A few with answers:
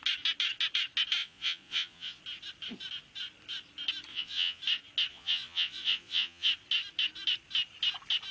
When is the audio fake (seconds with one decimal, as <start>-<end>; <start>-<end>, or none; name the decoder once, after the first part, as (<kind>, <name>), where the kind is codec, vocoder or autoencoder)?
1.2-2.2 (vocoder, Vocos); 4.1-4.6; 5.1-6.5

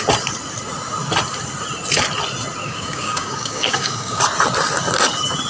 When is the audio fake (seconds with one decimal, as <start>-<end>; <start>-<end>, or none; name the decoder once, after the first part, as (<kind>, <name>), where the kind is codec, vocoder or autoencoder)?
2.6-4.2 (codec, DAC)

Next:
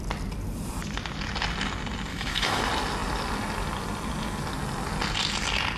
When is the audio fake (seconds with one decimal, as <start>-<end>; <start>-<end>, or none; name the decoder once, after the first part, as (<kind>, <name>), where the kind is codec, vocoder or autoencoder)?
2.1-2.6 (autoencoder, DAC-VAE)